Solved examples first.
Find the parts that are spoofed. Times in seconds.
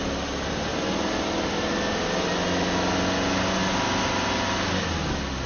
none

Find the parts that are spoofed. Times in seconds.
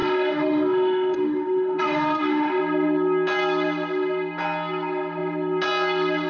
0.0-2.6 (autoencoder, DAC-VAE)